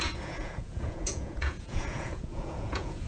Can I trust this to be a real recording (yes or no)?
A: no